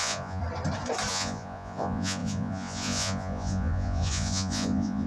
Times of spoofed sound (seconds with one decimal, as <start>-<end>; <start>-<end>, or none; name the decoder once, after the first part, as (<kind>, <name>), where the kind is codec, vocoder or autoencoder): 0.0-0.4 (vocoder, Vocos); 1.1-5.1